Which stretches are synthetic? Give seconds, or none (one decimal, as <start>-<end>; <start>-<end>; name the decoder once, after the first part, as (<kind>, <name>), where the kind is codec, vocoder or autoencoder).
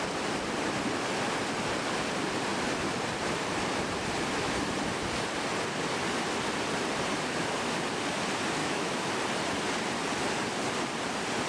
8.6-9.2 (autoencoder, DAC-VAE)